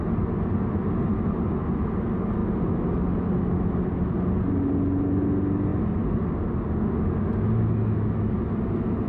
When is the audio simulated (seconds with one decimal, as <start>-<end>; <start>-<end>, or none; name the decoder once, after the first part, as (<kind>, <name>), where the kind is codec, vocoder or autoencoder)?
none